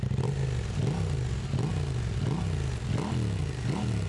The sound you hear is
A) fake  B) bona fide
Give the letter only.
B